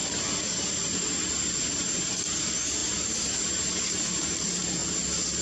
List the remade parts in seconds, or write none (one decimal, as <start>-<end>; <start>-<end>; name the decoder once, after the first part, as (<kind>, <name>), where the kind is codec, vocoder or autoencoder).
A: 1.6-4.8 (vocoder, BigVGAN v2)